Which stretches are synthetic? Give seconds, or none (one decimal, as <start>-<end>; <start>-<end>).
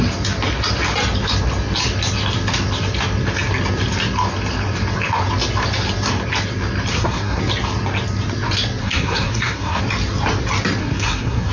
6.9-7.4; 8.8-9.8; 10.8-11.5